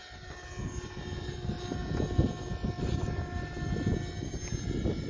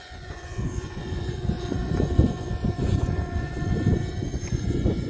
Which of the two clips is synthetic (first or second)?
second